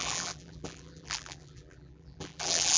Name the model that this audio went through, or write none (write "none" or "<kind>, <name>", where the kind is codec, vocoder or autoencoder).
vocoder, BigVGAN v2